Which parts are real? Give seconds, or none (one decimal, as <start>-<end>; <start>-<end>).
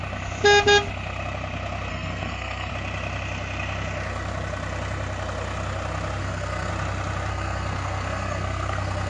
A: 0.0-1.9; 2.7-6.2; 6.7-7.3